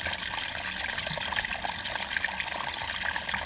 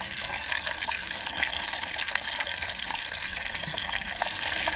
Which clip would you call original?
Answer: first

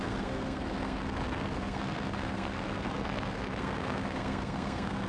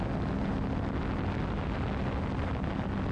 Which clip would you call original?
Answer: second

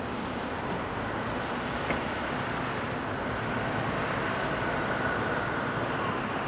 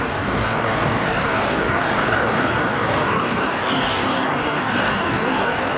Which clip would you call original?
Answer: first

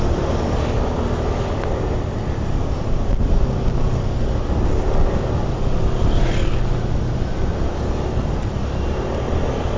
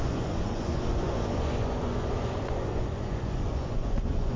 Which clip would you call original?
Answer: first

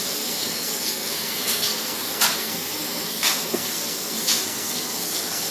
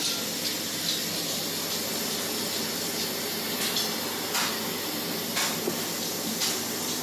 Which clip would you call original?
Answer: second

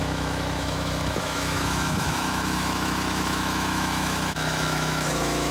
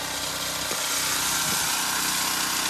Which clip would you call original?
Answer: second